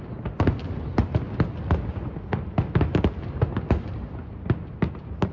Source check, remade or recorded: recorded